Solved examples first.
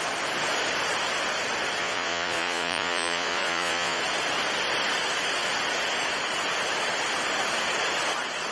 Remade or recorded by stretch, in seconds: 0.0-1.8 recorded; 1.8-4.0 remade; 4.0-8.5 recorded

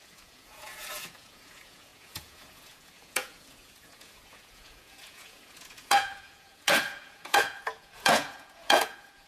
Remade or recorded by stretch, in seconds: 0.0-9.3 remade

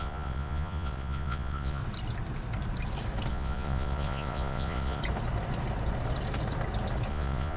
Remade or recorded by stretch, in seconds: 0.0-1.8 remade; 1.8-3.3 recorded; 3.3-5.0 remade; 5.0-7.1 recorded; 7.1-7.6 remade

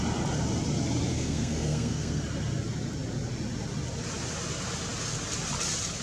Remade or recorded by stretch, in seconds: 0.0-1.1 recorded; 1.1-2.2 remade; 2.2-6.0 recorded